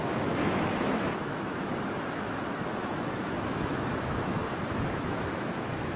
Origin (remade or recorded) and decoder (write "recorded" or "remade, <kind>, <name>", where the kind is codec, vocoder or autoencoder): remade, autoencoder, DAC-VAE